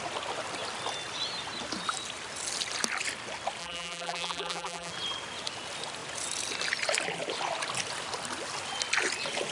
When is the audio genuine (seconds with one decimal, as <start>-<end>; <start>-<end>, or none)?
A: 0.0-3.6; 4.9-9.5